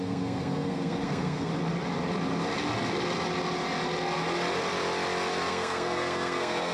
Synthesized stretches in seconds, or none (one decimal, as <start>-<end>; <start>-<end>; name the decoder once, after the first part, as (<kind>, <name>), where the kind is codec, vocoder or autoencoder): 0.0-1.5 (codec, SNAC); 5.5-6.7